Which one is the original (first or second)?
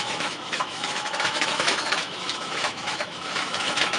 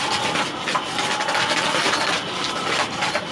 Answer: second